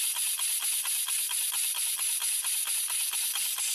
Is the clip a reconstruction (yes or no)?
no